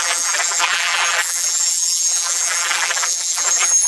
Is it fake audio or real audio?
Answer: fake